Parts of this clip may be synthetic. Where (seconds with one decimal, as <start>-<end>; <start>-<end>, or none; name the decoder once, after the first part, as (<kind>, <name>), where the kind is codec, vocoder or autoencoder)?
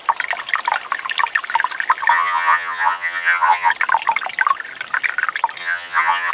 2.1-3.7 (vocoder, HiFi-GAN); 5.6-6.3